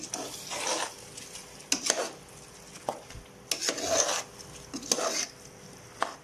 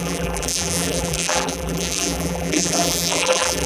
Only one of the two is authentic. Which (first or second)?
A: first